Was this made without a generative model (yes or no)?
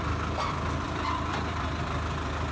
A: no